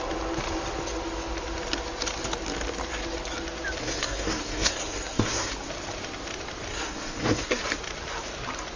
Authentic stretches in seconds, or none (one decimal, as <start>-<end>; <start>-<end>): 0.0-3.8; 5.5-6.7; 7.6-8.8